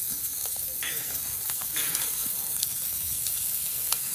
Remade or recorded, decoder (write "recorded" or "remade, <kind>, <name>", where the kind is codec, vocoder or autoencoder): remade, codec, SNAC